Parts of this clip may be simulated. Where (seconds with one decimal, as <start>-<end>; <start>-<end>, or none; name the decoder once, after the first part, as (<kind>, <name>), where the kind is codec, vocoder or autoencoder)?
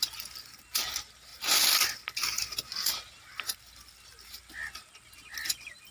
none